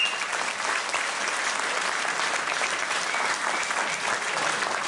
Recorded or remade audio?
recorded